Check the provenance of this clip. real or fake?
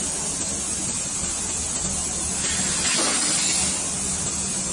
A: real